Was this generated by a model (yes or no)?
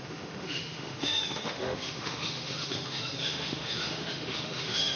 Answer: yes